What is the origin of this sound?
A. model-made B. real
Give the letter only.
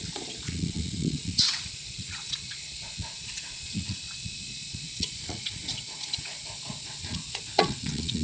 A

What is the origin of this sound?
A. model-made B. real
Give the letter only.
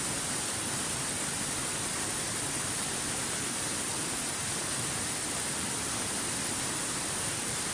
B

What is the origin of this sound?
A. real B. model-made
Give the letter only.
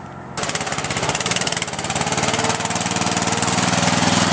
A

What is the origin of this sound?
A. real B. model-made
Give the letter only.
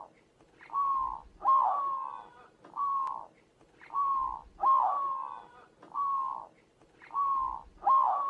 A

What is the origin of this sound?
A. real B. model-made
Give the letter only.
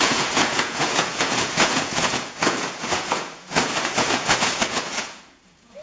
B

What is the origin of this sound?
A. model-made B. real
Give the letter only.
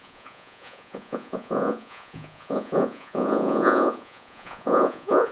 A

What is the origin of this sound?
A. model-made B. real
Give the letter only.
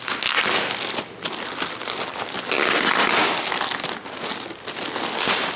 B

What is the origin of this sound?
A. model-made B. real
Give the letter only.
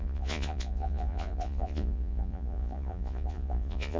A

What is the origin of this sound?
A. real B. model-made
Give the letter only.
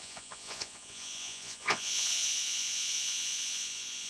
B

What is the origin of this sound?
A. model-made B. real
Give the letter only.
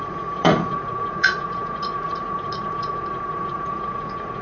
A